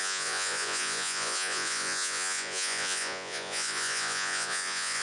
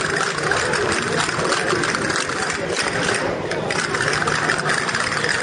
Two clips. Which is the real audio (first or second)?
second